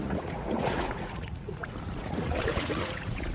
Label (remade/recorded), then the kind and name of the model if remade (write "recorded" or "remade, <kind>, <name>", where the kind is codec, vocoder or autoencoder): remade, vocoder, Vocos